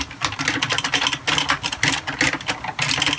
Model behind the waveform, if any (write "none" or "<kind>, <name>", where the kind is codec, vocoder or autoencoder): none